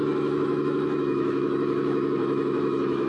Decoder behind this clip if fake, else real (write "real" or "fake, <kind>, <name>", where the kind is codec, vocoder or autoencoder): fake, autoencoder, DAC-VAE